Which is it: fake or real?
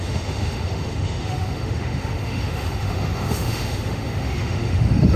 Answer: fake